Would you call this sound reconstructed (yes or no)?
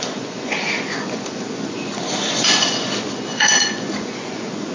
yes